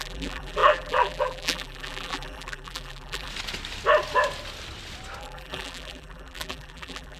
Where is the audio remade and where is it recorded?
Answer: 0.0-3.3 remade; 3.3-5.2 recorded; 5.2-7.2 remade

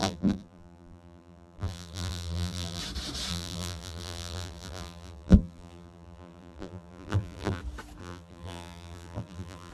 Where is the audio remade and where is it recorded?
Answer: 0.0-2.8 remade; 2.8-3.3 recorded; 3.3-7.6 remade; 7.6-8.0 recorded; 8.0-9.7 remade